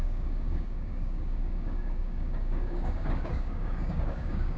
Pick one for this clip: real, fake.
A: fake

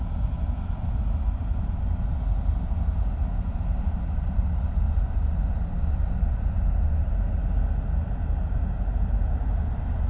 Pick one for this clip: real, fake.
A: real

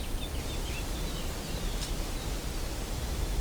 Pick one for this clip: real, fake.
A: real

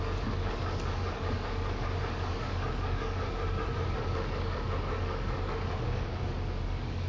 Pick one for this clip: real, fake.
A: fake